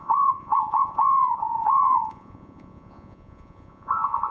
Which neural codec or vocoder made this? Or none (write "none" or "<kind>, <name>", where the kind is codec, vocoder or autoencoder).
vocoder, Vocos